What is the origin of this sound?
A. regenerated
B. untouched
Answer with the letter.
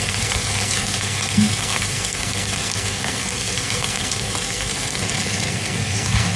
A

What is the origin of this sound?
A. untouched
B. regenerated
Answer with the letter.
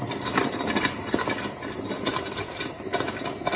A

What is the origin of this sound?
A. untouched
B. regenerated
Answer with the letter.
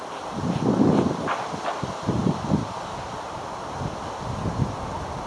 A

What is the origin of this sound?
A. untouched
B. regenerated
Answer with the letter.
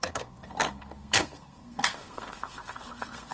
B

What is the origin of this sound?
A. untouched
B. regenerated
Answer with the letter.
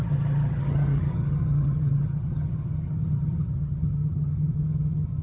B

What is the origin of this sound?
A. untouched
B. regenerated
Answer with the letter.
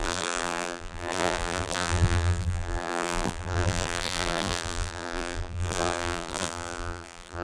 B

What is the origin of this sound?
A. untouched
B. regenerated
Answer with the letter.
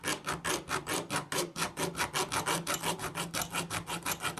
A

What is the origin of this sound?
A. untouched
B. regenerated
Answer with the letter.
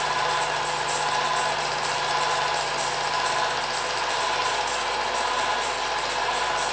A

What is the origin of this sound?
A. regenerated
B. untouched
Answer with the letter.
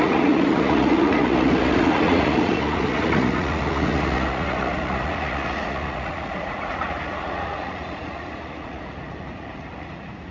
A